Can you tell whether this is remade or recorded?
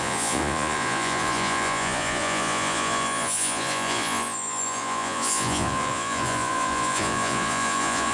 remade